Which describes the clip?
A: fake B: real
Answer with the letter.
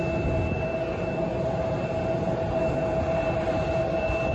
B